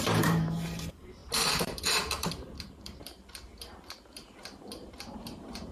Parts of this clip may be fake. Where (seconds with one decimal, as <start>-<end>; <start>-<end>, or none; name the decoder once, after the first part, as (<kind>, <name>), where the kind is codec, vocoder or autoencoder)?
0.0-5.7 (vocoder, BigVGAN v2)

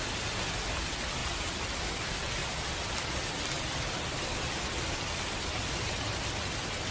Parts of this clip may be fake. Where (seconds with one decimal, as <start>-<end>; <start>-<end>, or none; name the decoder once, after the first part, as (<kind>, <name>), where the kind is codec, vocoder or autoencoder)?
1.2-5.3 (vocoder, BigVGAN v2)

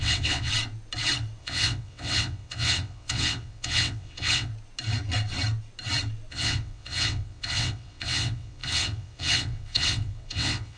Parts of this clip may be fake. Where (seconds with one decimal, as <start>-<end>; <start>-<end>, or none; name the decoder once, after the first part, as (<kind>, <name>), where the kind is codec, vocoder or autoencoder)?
0.0-0.5 (vocoder, WaveNeXt); 1.4-4.5; 6.3-10.8